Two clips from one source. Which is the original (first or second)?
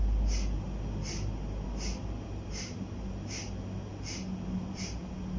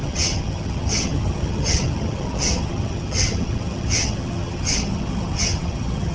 first